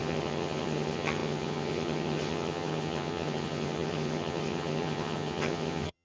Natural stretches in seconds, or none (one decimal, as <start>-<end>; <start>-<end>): none